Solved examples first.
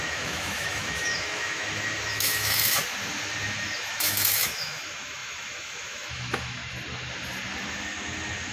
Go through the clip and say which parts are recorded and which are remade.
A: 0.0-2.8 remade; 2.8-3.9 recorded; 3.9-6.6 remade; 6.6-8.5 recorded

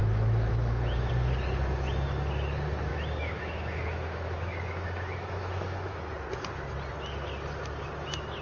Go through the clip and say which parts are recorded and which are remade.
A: 0.0-1.1 remade; 1.1-2.9 recorded; 2.9-6.0 remade; 6.0-8.4 recorded

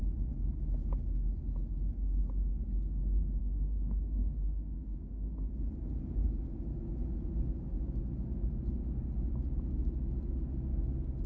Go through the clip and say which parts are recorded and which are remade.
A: 0.0-3.4 recorded; 3.4-5.5 remade; 5.5-11.3 recorded

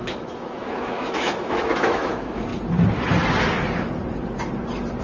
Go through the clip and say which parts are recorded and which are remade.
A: 0.0-2.5 remade; 2.5-5.0 recorded

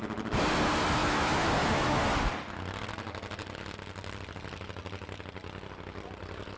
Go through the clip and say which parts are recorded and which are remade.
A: 0.0-1.0 recorded; 1.0-2.0 remade; 2.0-6.6 recorded

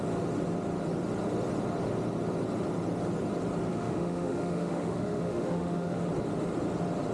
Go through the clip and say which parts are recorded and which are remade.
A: 0.0-3.7 recorded; 3.7-6.1 remade; 6.1-7.1 recorded

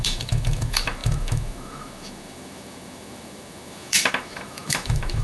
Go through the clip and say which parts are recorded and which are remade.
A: 0.0-5.2 remade

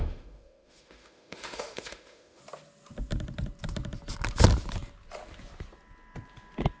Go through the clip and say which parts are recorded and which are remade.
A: 0.0-2.4 remade; 2.4-6.8 recorded